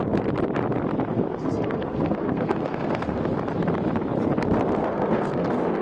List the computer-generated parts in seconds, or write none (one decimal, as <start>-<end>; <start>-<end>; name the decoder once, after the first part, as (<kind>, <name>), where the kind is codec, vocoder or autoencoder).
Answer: 1.1-3.3 (codec, SNAC); 4.8-5.8